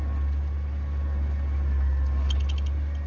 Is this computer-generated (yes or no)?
no